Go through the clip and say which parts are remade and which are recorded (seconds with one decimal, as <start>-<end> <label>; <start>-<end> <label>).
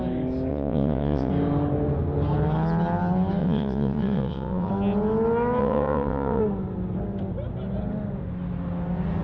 0.0-0.5 recorded; 0.5-1.3 remade; 1.3-3.4 recorded; 3.4-4.7 remade; 4.7-5.6 recorded; 5.6-6.4 remade; 6.4-9.2 recorded